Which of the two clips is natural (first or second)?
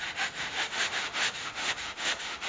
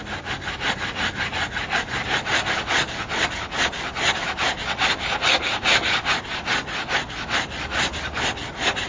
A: second